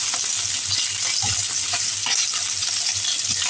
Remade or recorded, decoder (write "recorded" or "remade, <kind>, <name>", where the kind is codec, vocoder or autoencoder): recorded